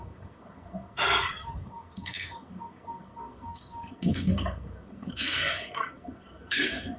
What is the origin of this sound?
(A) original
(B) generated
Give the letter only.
B